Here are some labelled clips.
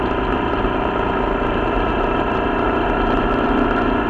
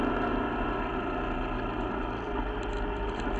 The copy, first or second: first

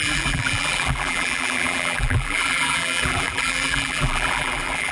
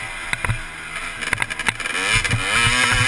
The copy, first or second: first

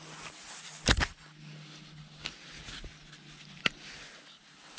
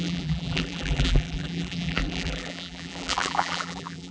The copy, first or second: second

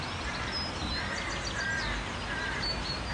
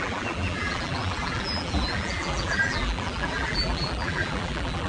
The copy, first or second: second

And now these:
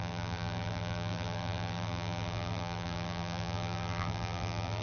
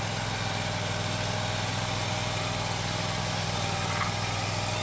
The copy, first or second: first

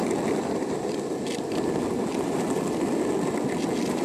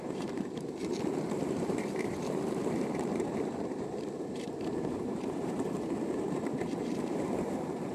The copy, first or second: second